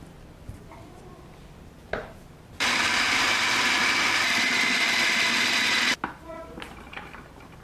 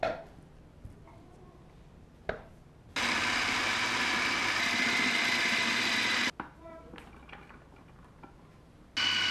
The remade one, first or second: first